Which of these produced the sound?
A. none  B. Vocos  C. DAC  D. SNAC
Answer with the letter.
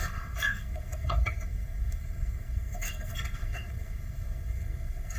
D